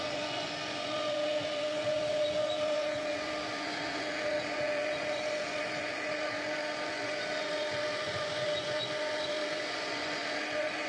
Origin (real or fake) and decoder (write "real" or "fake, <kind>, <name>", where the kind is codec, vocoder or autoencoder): fake, vocoder, Vocos